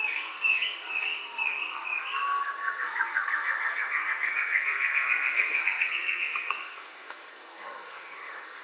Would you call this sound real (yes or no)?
no